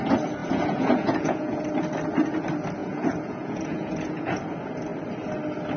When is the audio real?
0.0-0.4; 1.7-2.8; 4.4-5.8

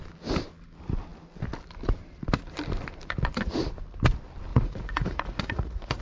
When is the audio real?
0.0-4.5

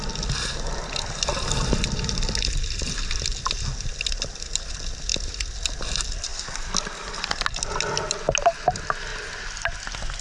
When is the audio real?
0.0-10.2